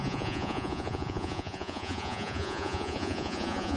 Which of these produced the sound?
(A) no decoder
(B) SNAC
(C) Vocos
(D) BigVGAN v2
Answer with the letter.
C